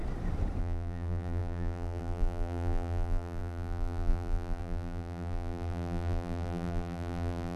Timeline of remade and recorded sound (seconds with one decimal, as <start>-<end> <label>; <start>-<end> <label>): 0.0-0.6 recorded; 0.6-7.6 remade